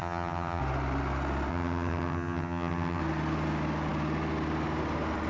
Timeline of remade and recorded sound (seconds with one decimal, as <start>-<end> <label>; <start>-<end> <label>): 0.0-0.6 remade; 0.6-1.5 recorded; 1.5-3.0 remade; 3.0-5.3 recorded